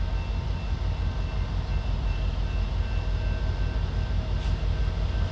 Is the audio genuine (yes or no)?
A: yes